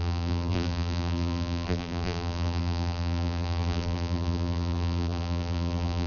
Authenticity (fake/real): fake